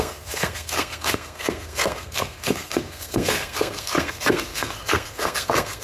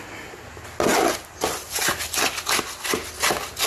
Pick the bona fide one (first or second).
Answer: second